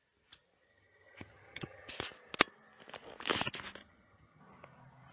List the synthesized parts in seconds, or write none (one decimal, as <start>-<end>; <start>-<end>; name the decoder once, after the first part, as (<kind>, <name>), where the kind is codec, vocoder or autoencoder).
0.7-1.9 (vocoder, HiFi-GAN); 3.8-4.4